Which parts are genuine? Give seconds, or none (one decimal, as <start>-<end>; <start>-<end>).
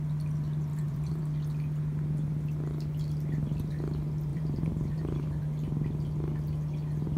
0.0-0.7; 1.2-4.3; 5.4-7.2